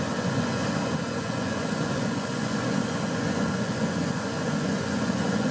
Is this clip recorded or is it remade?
remade